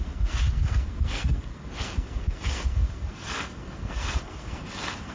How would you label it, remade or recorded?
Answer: remade